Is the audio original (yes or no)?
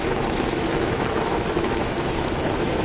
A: no